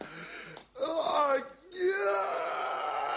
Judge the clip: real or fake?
real